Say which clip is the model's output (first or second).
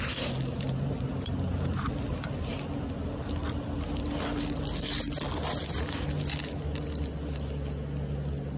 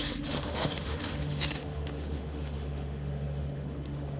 second